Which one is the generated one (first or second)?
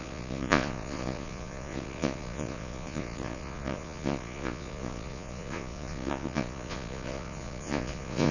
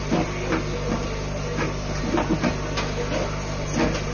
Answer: first